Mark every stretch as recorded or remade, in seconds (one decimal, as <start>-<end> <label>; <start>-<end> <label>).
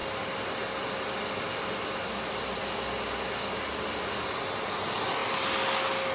0.0-6.1 recorded